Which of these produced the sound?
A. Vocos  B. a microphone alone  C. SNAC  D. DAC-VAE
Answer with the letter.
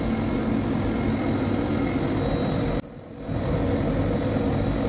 B